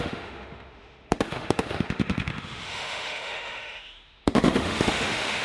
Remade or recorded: remade